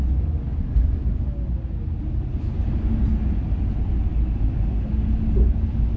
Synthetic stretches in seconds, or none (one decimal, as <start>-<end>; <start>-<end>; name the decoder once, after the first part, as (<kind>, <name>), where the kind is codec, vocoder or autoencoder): none